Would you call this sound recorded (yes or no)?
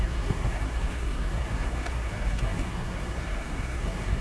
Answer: no